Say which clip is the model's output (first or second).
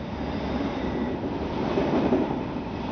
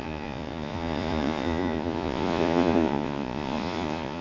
second